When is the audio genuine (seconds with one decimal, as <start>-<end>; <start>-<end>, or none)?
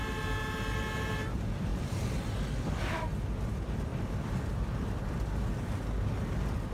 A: 0.0-6.7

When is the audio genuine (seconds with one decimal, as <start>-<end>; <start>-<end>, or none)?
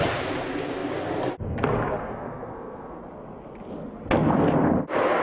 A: 0.0-2.0; 3.0-5.2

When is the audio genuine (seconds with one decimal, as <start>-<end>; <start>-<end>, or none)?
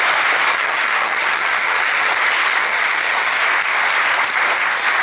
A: 0.0-0.5; 2.1-2.6; 3.4-5.0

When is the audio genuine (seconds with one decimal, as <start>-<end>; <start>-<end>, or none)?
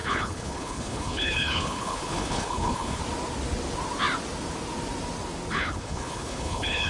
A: 3.0-5.5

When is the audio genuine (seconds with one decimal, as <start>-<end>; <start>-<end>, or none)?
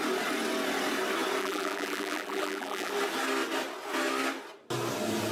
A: 0.0-1.4; 2.9-5.3